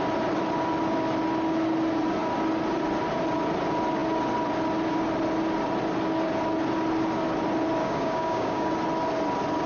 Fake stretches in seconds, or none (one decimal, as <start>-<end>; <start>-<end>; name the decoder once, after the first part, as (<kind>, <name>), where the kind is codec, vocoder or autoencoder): 7.8-8.7 (codec, DAC)